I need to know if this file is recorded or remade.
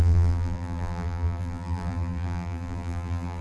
remade